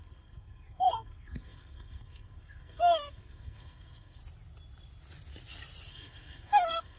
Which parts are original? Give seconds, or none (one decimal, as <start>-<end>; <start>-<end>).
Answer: 4.2-5.9